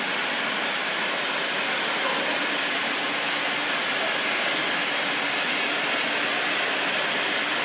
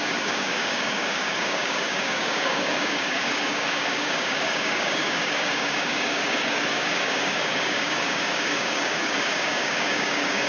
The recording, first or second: first